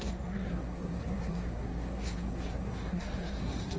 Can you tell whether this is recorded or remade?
remade